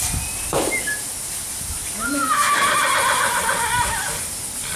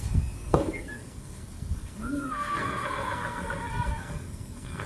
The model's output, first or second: second